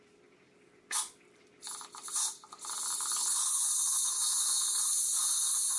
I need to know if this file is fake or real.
real